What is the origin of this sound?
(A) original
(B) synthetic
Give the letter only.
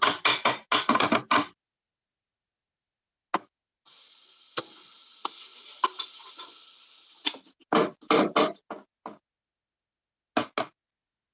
A